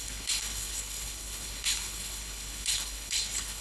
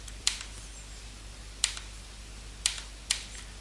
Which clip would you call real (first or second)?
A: second